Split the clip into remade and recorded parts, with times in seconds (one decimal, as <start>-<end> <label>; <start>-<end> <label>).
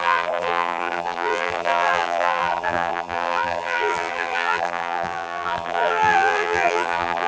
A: 0.0-7.3 remade